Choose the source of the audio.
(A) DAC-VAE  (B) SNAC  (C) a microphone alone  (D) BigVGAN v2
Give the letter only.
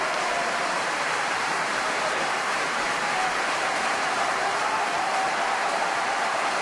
D